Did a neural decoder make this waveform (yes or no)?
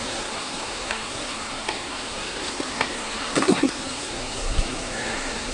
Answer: yes